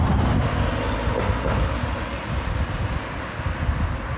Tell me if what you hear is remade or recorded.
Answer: recorded